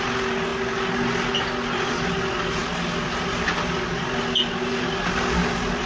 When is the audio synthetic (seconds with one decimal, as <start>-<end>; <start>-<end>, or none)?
none